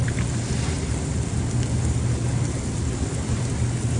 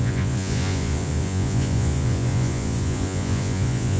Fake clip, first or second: second